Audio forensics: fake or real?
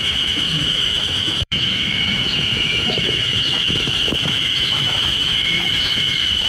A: fake